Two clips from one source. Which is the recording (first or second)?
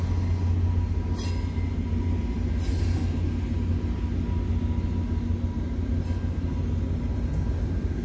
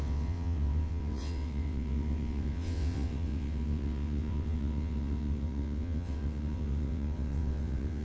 first